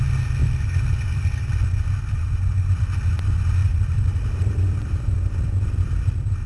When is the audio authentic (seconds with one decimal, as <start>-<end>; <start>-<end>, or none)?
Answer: 0.0-0.4; 3.1-3.6; 5.9-6.5